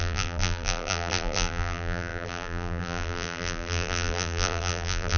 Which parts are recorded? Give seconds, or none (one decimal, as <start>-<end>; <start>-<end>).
none